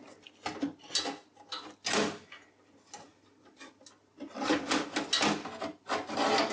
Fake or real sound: real